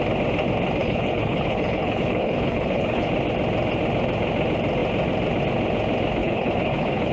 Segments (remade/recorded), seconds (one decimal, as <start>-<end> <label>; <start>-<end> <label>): 0.0-0.8 recorded; 0.8-3.1 remade; 3.1-6.2 recorded; 6.2-7.1 remade